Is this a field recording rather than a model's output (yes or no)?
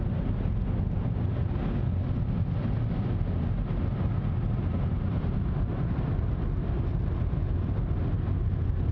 yes